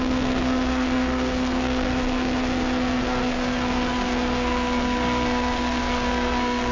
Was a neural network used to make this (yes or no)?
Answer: yes